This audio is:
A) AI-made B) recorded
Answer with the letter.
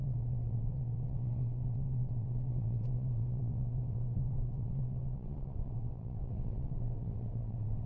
A